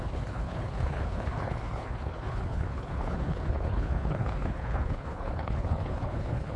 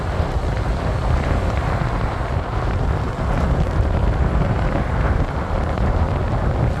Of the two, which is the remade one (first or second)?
first